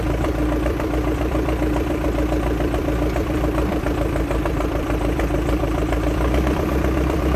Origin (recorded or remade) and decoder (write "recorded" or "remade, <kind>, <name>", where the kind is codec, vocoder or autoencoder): remade, vocoder, BigVGAN v2